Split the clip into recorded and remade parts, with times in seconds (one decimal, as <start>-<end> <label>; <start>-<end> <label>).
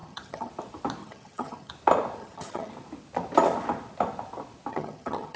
0.0-0.5 remade; 0.5-1.0 recorded; 1.0-1.7 remade; 1.7-2.2 recorded; 2.2-2.7 remade; 2.7-4.7 recorded; 4.7-5.4 remade